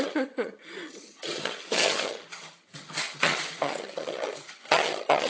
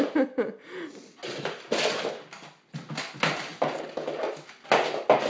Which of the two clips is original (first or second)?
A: second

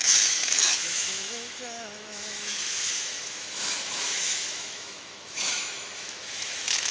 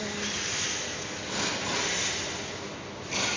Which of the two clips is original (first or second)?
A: second